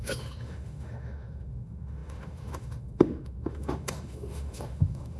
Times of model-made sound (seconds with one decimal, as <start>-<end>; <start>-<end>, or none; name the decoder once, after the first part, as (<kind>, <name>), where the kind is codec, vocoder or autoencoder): 0.0-5.2 (autoencoder, DAC-VAE)